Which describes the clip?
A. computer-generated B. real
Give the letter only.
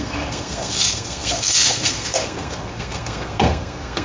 A